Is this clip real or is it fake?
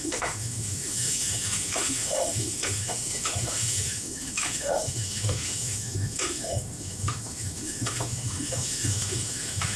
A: fake